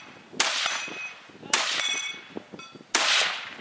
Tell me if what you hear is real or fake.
real